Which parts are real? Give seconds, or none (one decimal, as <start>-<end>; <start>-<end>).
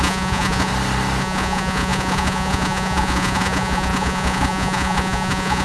0.7-1.2